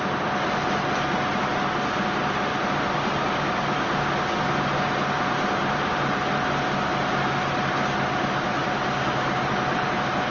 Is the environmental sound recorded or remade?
recorded